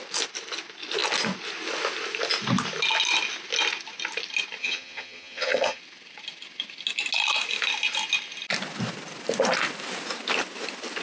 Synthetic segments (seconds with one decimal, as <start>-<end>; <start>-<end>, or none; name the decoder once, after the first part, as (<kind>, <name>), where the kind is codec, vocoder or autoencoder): 4.6-5.8 (vocoder, HiFi-GAN)